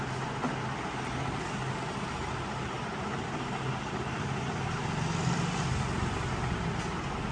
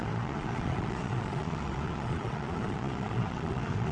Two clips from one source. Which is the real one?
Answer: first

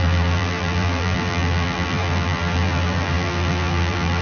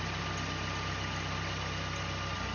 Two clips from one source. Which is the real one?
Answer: second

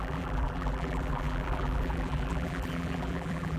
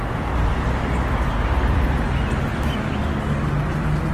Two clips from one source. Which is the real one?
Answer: second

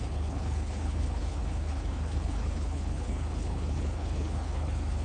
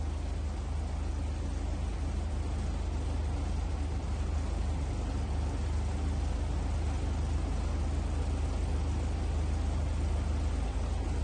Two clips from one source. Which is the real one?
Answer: second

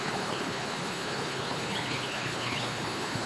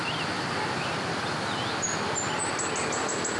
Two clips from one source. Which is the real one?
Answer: second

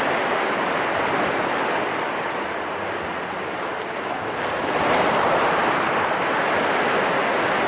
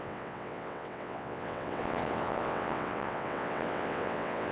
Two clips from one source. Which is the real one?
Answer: first